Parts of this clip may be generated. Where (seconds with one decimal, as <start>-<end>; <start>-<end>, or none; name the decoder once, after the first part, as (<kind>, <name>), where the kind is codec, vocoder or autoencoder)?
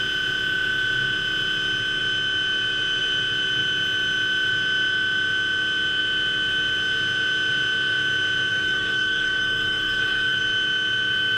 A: 8.5-10.4 (codec, DAC)